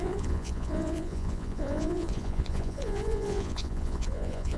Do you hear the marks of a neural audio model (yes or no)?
yes